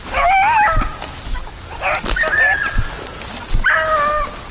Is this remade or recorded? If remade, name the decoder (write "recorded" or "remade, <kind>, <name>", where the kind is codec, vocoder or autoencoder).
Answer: recorded